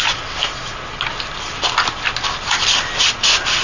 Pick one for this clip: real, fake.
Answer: real